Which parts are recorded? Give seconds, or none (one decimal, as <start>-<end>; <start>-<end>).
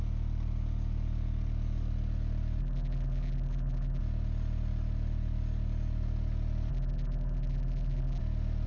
0.0-2.6; 4.0-6.7; 8.2-8.7